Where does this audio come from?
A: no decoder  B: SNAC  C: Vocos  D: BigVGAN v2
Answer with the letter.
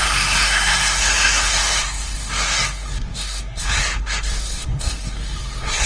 B